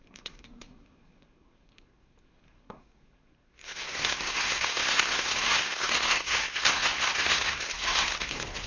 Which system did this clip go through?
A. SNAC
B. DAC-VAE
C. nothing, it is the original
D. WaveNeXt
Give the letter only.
A